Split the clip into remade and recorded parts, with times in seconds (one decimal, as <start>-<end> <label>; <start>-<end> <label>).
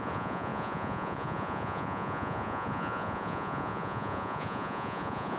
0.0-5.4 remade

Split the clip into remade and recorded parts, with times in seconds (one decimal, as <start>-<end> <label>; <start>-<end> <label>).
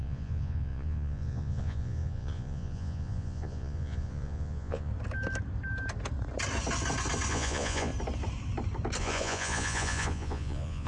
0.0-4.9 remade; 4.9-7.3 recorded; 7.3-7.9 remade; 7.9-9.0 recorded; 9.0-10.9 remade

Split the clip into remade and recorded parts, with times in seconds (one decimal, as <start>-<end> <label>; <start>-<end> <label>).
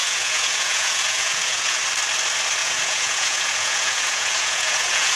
0.0-1.8 remade; 1.8-2.6 recorded; 2.6-5.2 remade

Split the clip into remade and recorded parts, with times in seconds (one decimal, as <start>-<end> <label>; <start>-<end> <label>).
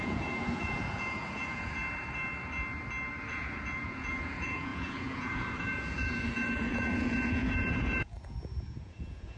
0.0-1.8 remade; 1.8-3.3 recorded; 3.3-9.4 remade